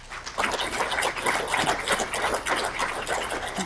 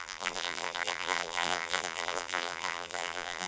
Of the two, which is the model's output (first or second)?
second